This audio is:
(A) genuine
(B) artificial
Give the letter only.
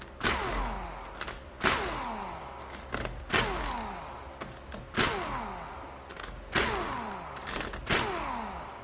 A